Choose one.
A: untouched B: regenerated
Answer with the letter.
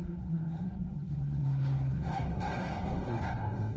B